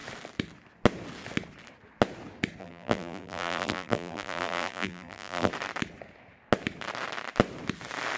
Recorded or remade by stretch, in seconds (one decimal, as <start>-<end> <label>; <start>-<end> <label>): 0.0-2.6 recorded; 2.6-5.5 remade; 5.5-8.2 recorded